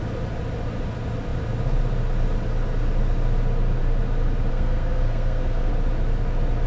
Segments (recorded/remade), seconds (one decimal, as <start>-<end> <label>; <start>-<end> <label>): 0.0-4.5 recorded; 4.5-5.7 remade; 5.7-6.7 recorded

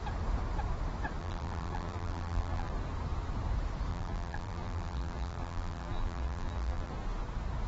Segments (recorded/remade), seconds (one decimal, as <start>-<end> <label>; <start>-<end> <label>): 0.0-1.2 recorded; 1.2-2.7 remade; 2.7-3.9 recorded; 3.9-6.9 remade; 6.9-7.7 recorded

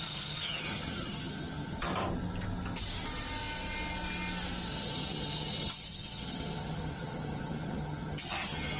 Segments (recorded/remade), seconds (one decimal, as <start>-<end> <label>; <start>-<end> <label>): 0.0-1.9 remade; 1.9-4.7 recorded; 4.7-8.8 remade